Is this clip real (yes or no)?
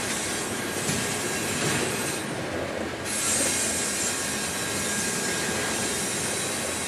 yes